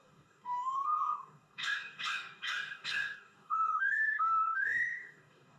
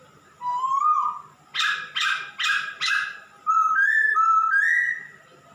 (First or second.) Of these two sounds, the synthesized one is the first